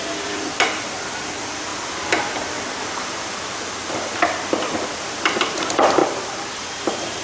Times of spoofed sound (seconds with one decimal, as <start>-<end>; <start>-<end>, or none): 0.0-1.7; 5.6-6.0; 6.8-7.2